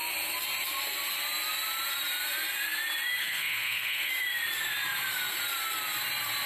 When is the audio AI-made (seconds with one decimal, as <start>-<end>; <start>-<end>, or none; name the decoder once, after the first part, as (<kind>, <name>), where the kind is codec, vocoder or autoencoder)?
3.2-4.1 (codec, SNAC)